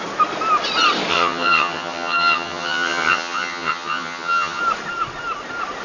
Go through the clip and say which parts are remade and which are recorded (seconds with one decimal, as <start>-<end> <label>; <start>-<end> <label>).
0.0-1.1 recorded; 1.1-4.6 remade; 4.6-5.8 recorded